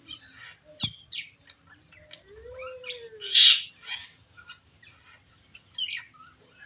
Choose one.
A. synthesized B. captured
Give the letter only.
B